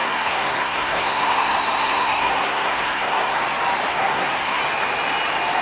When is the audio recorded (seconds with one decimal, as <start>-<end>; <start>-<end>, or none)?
3.4-3.9; 4.6-5.6